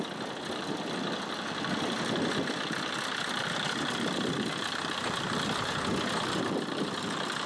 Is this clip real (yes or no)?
yes